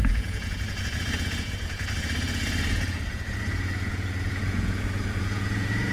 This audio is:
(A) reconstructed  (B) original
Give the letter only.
A